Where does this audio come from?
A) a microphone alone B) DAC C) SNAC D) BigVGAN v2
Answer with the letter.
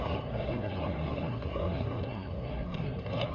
C